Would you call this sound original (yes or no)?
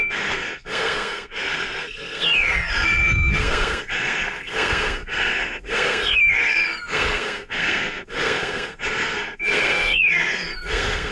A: no